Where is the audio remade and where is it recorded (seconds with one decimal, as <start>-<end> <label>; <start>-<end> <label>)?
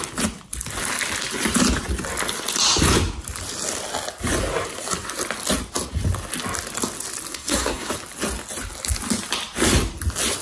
0.0-7.3 recorded; 7.3-7.9 remade; 7.9-10.4 recorded